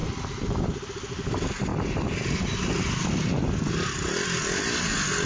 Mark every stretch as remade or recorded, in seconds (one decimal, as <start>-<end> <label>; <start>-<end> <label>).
0.0-5.3 recorded